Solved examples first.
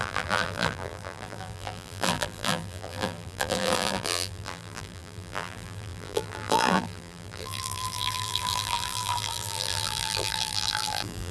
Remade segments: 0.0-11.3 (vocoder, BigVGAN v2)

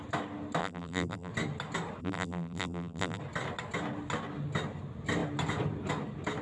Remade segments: 0.6-1.3 (vocoder, BigVGAN v2); 2.0-3.2